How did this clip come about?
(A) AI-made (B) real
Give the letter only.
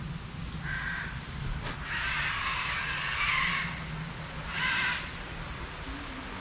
B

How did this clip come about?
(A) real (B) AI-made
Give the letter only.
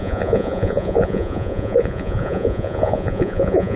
B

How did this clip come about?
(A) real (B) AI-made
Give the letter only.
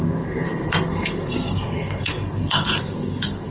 B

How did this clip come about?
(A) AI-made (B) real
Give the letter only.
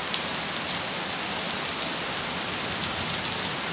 B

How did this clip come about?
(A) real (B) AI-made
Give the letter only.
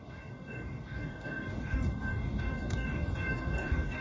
B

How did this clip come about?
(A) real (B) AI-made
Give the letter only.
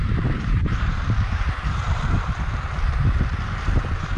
B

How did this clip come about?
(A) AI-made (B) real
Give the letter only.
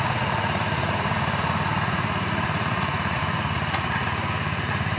A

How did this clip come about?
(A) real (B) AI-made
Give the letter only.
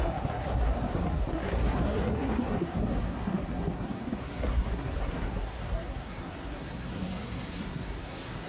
B